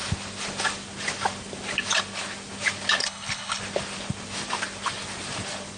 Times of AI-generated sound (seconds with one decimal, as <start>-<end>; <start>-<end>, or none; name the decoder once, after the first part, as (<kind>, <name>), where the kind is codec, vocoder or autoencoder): 3.0-3.6 (codec, HILCodec)